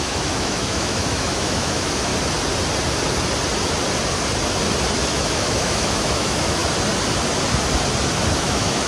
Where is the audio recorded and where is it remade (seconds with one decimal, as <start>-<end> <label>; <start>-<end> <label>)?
0.0-2.1 remade; 2.1-5.1 recorded; 5.1-6.6 remade; 6.6-8.4 recorded; 8.4-8.9 remade